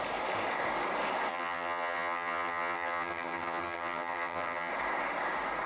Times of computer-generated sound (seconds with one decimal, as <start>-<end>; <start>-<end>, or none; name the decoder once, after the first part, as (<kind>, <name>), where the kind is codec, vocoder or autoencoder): 1.3-4.7 (vocoder, HiFi-GAN)